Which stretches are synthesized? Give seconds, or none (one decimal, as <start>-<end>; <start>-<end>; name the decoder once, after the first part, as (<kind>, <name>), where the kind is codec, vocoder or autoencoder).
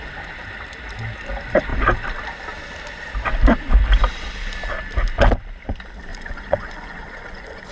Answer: 6.1-7.7 (vocoder, Vocos)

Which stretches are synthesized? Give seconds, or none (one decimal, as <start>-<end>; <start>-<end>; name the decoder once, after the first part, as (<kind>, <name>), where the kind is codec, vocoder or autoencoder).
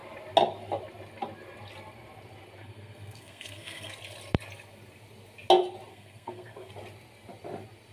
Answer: 2.6-3.9 (codec, SNAC); 5.9-6.7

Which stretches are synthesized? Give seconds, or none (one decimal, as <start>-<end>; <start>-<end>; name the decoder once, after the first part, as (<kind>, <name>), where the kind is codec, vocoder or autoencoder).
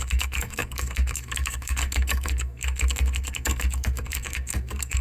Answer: 0.0-5.0 (codec, SNAC)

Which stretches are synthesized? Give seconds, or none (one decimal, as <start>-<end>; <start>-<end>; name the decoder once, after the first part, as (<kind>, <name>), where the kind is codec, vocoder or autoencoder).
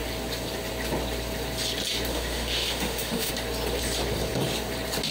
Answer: 2.1-3.3 (autoencoder, DAC-VAE)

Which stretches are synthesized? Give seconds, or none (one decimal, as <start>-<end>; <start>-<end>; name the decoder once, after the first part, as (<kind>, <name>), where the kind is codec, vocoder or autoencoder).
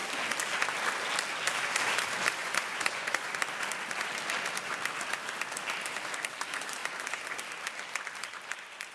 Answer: 2.4-3.3 (vocoder, Vocos)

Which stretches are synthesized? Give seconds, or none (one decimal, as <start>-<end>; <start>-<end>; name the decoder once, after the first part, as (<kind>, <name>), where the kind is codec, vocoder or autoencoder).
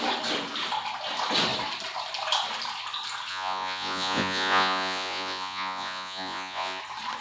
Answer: 3.3-6.8 (vocoder, Vocos)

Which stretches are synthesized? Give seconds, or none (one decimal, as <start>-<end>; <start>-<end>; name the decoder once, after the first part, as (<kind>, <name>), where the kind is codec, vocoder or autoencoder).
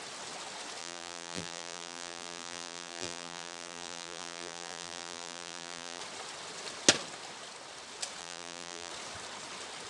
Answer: 0.8-6.0 (vocoder, BigVGAN v2); 8.2-8.9